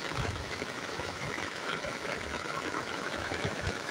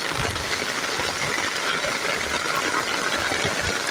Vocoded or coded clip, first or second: first